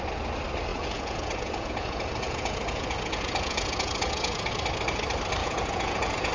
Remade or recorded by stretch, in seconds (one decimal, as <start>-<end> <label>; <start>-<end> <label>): 0.0-0.7 recorded; 0.7-4.5 remade; 4.5-5.4 recorded; 5.4-6.3 remade